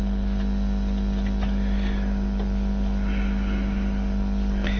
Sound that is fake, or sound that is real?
real